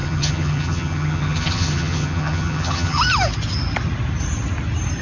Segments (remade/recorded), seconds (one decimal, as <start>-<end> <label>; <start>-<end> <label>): 0.0-3.0 remade; 3.0-5.0 recorded